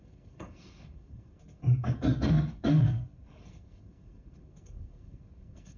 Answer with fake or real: fake